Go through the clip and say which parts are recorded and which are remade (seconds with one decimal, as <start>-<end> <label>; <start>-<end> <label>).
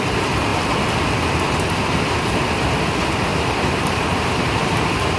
0.0-3.3 recorded; 3.3-5.2 remade